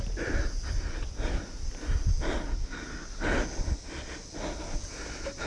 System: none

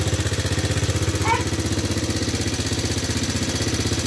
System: none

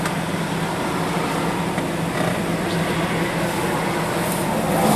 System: none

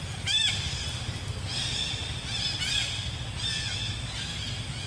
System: none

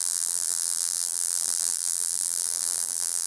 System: vocoder, BigVGAN v2